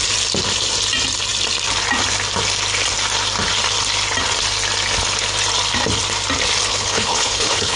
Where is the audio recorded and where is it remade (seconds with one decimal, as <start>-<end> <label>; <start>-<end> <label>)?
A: 0.0-6.7 recorded; 6.7-7.8 remade